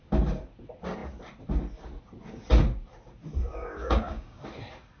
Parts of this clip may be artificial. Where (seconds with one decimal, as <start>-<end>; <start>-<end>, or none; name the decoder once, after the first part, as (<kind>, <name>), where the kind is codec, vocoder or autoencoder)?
3.6-4.4 (codec, DAC)